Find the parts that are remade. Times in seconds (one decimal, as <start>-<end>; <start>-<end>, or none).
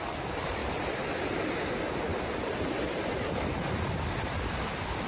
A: 0.6-1.4